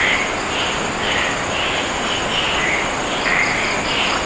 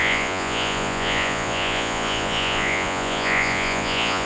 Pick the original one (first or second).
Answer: first